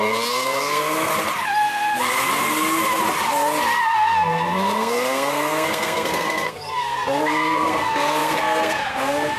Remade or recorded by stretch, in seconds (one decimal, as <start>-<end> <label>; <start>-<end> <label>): 0.0-1.1 remade; 1.1-3.9 recorded; 3.9-9.4 remade